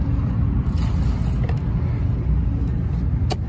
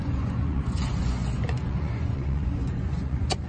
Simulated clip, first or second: second